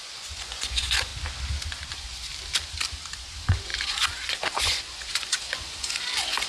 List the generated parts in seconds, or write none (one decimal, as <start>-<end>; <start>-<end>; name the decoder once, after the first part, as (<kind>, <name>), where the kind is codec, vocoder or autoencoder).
0.0-1.1 (vocoder, Vocos); 1.9-2.3; 3.2-6.5